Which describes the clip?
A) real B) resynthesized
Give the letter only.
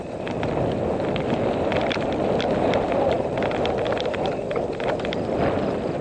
A